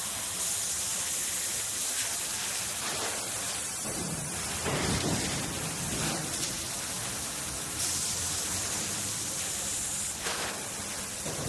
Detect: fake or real fake